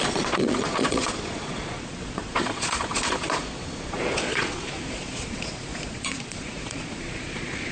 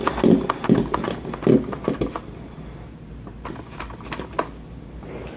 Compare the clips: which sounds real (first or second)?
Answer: second